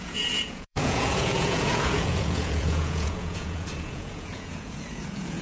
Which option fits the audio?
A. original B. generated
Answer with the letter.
B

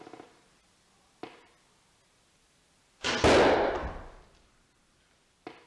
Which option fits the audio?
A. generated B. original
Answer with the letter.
B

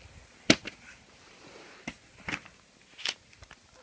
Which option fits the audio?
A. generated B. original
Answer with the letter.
B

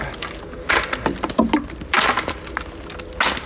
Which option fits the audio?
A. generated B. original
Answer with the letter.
B